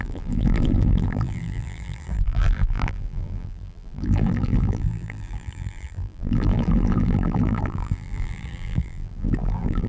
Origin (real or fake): fake